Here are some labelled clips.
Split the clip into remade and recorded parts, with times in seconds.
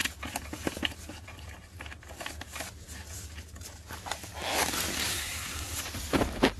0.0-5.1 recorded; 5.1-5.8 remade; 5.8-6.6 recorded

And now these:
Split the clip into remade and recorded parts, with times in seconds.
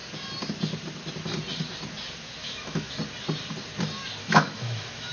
0.0-2.4 recorded; 2.4-3.0 remade; 3.0-4.2 recorded; 4.2-5.1 remade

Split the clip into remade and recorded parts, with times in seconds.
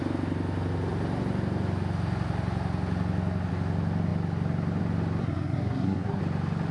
0.0-5.2 recorded; 5.2-6.2 remade; 6.2-6.7 recorded